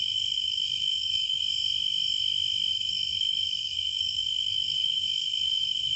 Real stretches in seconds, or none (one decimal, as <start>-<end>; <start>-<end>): 1.4-2.7